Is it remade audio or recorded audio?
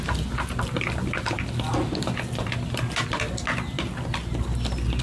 recorded